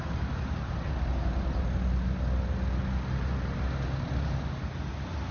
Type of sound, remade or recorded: recorded